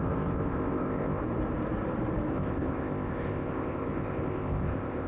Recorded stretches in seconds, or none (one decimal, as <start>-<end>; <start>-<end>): 1.2-2.3